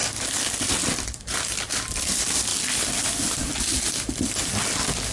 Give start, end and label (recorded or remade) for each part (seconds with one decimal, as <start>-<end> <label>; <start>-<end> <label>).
0.0-0.6 recorded; 0.6-5.1 remade

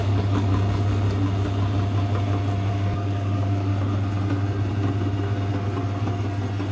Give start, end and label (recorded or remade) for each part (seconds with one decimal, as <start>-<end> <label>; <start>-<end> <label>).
0.0-0.5 remade; 0.5-2.7 recorded; 2.7-3.7 remade; 3.7-6.7 recorded